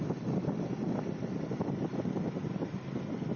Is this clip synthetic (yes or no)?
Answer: no